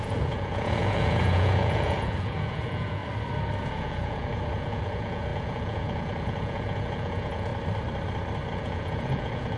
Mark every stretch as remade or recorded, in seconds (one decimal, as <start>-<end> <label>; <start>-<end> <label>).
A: 0.0-3.0 remade; 3.0-3.6 recorded; 3.6-7.5 remade; 7.5-8.5 recorded; 8.5-9.6 remade